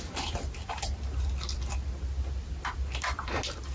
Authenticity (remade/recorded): recorded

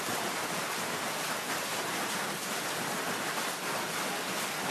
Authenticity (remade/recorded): recorded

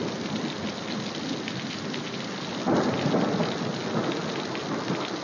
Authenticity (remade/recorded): recorded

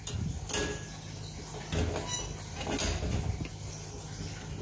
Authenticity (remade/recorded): recorded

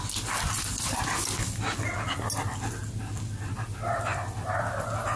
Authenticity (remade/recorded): recorded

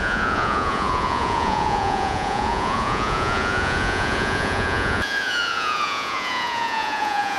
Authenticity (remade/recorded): remade